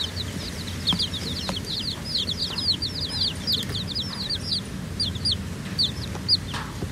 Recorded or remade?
recorded